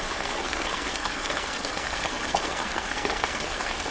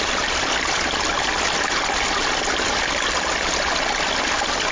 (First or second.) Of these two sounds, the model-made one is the first